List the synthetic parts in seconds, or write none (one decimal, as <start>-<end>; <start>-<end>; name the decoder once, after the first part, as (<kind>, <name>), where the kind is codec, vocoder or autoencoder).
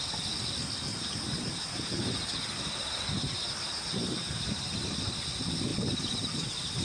0.9-5.0 (vocoder, BigVGAN v2); 5.7-6.8